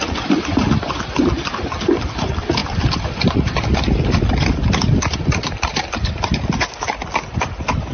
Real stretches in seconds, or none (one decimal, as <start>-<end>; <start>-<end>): 0.0-7.9